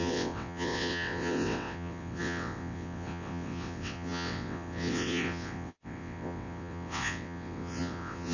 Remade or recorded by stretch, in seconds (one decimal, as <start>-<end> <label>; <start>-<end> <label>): 0.0-8.3 remade